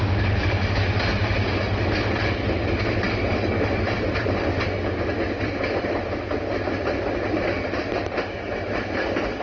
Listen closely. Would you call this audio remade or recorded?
recorded